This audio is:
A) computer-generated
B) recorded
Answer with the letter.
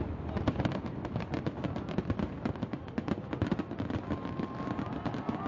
B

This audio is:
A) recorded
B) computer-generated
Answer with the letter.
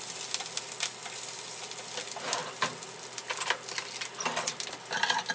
A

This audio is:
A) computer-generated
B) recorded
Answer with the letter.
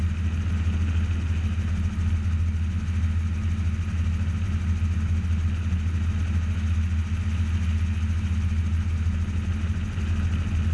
B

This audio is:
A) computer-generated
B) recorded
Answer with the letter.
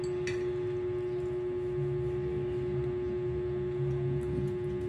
B